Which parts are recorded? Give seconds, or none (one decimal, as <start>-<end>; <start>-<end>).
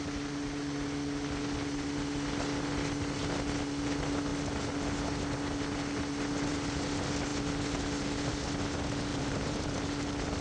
0.0-9.1; 9.9-10.4